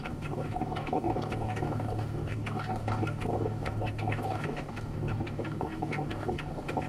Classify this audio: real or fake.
fake